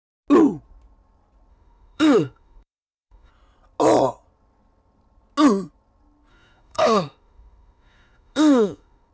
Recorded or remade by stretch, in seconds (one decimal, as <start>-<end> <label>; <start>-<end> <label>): 0.0-1.5 recorded; 1.5-3.3 remade; 3.3-6.3 recorded; 6.3-9.1 remade